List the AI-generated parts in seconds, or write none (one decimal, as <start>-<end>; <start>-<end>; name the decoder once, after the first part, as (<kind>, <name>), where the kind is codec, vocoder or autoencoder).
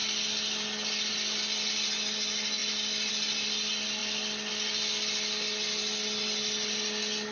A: none